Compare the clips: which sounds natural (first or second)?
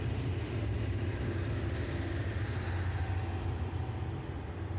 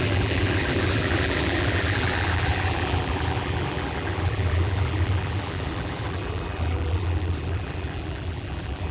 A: first